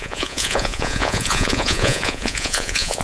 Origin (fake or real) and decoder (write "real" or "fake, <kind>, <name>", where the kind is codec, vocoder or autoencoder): fake, vocoder, Vocos